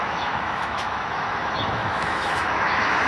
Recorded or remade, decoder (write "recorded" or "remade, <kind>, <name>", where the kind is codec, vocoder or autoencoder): remade, autoencoder, DAC-VAE